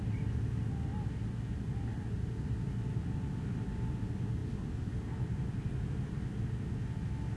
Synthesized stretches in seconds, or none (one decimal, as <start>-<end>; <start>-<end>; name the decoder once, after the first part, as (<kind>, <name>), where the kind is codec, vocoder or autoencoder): none